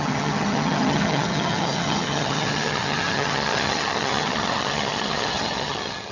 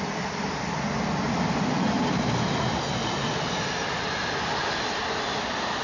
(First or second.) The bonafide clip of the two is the second